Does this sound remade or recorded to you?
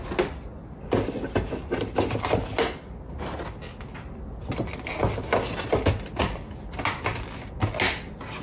recorded